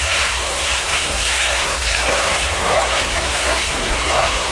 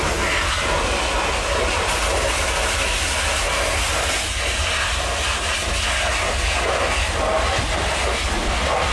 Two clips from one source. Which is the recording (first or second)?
second